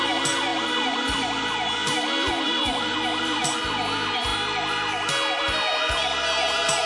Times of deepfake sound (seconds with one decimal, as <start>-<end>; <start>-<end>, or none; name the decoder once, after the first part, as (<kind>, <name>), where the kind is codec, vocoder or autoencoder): none